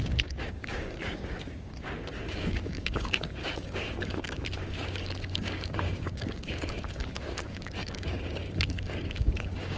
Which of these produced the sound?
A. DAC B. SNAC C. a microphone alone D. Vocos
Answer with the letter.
A